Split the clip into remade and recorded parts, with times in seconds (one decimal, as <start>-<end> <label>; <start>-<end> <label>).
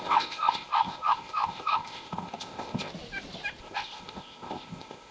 0.0-2.9 remade; 2.9-3.6 recorded; 3.6-5.1 remade